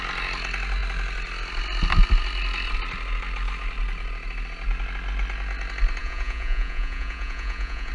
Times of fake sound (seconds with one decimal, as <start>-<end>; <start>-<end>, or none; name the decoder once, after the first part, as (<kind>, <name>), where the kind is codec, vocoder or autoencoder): 6.0-7.9 (vocoder, Vocos)